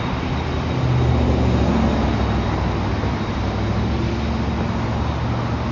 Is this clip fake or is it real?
real